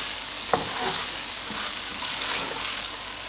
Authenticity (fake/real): fake